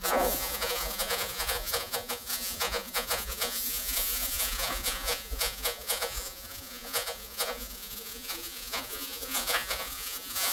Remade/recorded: remade